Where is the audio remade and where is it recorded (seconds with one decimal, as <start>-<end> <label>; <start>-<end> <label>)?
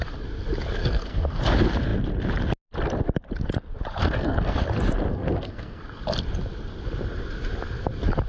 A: 0.0-0.8 recorded; 0.8-1.4 remade; 1.4-4.0 recorded; 4.0-4.6 remade; 4.6-5.1 recorded; 5.1-5.8 remade; 5.8-8.3 recorded